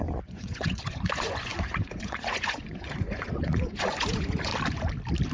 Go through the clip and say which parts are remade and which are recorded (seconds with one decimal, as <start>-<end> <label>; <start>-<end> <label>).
0.0-4.5 remade; 4.5-5.3 recorded